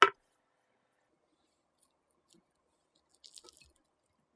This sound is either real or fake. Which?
real